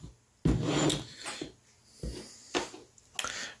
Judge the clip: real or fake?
real